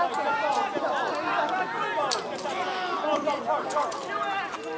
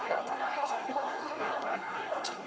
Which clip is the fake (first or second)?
second